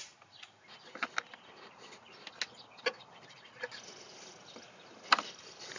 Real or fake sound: real